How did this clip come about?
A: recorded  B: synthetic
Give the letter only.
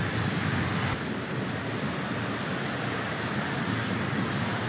A